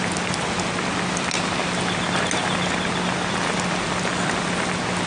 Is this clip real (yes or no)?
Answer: yes